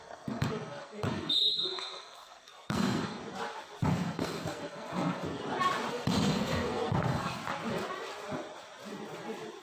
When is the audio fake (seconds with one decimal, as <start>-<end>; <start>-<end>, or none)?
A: 0.0-3.2; 3.9-5.4; 5.9-7.4